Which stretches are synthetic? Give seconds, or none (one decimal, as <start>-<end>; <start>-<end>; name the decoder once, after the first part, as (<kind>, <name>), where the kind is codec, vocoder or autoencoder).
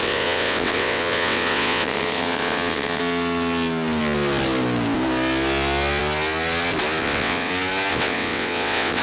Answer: 0.0-3.0 (vocoder, WaveNeXt); 7.0-7.5; 7.9-9.0